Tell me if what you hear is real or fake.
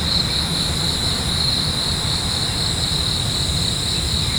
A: real